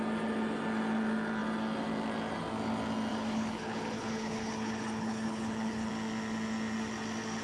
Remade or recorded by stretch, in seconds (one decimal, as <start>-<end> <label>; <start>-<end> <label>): 0.0-3.1 recorded; 3.1-5.9 remade; 5.9-7.4 recorded